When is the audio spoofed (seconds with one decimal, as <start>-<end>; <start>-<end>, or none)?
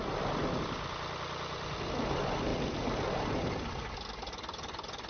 2.5-4.3